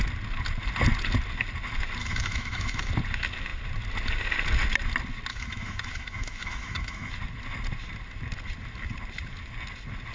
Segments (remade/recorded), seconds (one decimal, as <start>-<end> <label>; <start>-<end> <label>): 0.0-2.0 recorded; 2.0-2.9 remade; 2.9-5.3 recorded; 5.3-7.1 remade; 7.1-10.1 recorded